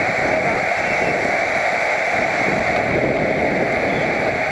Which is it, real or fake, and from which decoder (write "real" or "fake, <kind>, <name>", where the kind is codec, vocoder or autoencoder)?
real